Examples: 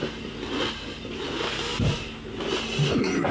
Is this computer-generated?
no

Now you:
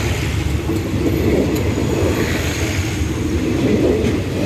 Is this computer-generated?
no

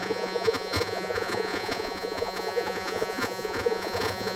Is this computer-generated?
yes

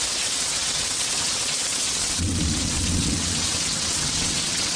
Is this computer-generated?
yes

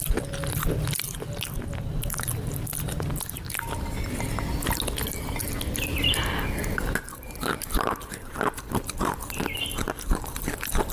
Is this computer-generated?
no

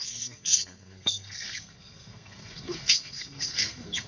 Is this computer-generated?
yes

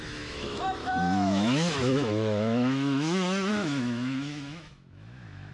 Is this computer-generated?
yes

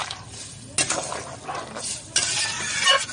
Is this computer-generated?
no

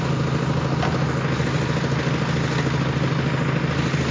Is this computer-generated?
no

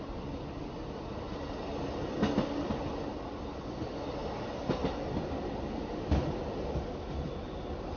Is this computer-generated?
no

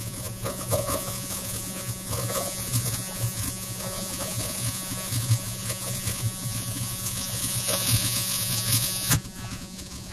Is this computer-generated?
yes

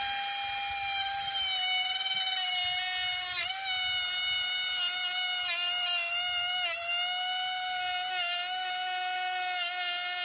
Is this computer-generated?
no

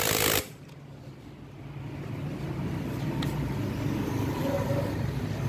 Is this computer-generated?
no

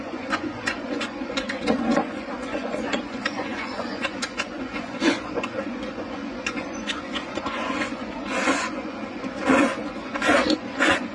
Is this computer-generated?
yes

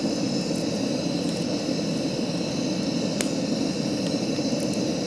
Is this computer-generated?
no